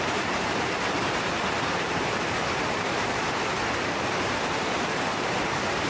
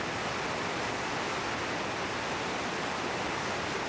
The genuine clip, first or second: second